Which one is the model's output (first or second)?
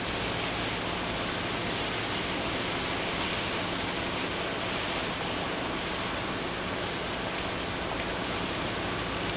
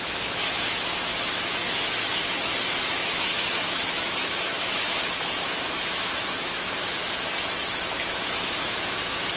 second